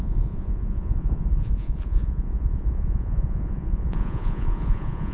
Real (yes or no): no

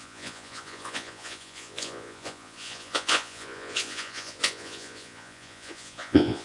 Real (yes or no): no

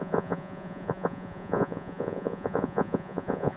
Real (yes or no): no